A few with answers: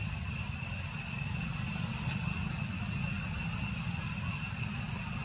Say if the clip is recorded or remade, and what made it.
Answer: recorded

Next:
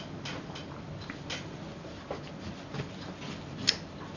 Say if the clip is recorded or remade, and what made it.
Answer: recorded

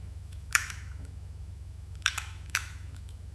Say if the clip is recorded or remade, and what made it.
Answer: remade, autoencoder, DAC-VAE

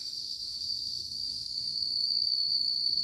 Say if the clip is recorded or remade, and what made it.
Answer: remade, autoencoder, DAC-VAE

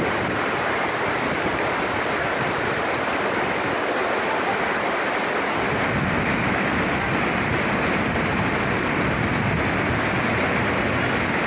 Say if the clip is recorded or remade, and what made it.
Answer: recorded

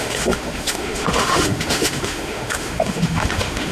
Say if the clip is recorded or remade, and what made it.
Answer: remade, autoencoder, DAC-VAE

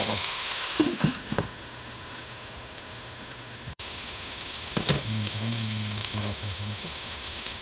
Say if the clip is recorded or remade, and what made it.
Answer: remade, autoencoder, DAC-VAE